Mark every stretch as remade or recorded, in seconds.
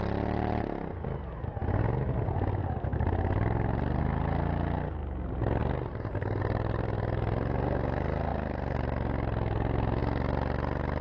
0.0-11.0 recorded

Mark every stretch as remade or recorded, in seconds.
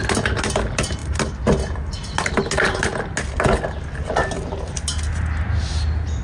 0.0-6.2 recorded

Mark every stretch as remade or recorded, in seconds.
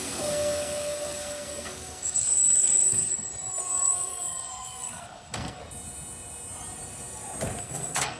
0.0-3.1 remade; 3.1-3.6 recorded; 3.6-5.6 remade; 5.6-7.6 recorded; 7.6-8.2 remade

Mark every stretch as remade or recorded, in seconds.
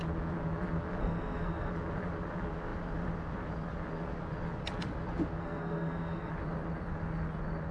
0.0-1.0 recorded; 1.0-1.7 remade; 1.7-5.4 recorded; 5.4-6.3 remade; 6.3-7.7 recorded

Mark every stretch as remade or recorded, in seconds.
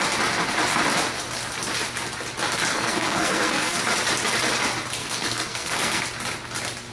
0.0-2.7 recorded; 2.7-3.8 remade; 3.8-5.0 recorded; 5.0-6.0 remade; 6.0-6.9 recorded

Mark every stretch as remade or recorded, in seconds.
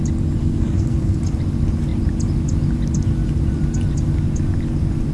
0.0-0.4 recorded; 0.4-1.2 remade; 1.2-5.1 recorded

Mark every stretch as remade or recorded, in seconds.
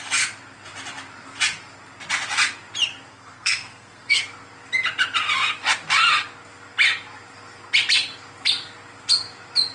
0.0-3.1 recorded; 3.1-4.2 remade; 4.2-9.7 recorded